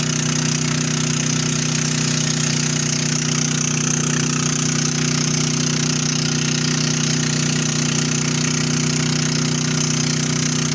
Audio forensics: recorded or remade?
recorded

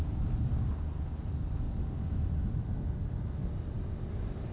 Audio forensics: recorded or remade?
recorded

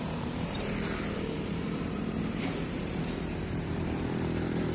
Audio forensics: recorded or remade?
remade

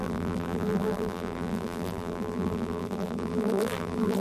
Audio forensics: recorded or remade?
remade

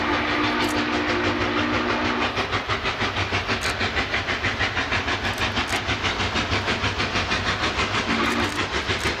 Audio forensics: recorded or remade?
recorded